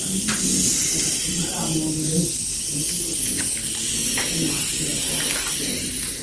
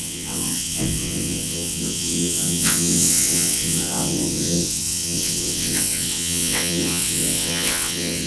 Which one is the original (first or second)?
first